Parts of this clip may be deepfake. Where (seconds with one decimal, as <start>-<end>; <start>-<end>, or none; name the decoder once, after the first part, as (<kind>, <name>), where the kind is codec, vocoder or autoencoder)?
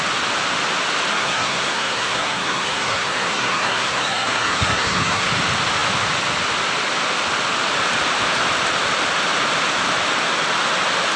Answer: 1.1-5.3 (codec, SNAC)